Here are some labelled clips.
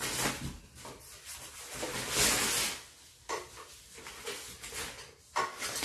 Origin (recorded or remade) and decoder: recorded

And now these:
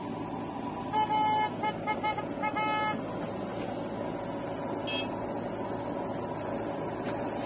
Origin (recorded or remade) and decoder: recorded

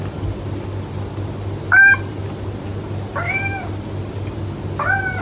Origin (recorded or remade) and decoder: recorded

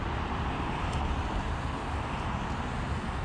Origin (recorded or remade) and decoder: recorded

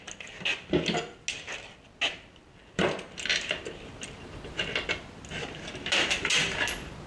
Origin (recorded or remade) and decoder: recorded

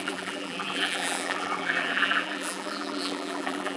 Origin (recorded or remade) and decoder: remade, vocoder, BigVGAN v2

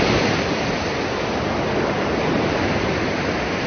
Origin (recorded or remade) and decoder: recorded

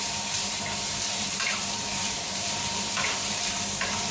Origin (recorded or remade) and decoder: remade, vocoder, BigVGAN v2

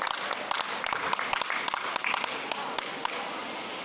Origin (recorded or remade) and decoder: recorded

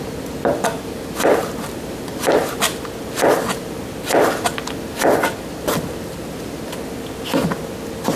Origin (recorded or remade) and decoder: recorded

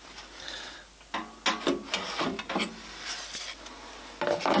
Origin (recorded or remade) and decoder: recorded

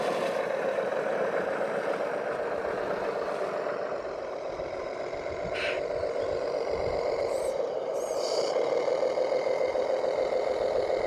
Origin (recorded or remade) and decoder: remade, vocoder, BigVGAN v2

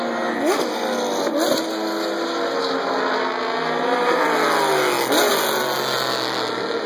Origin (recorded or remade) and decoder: recorded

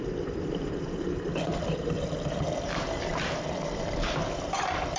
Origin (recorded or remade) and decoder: remade, vocoder, BigVGAN v2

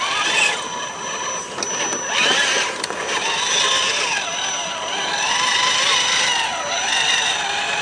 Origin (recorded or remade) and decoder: recorded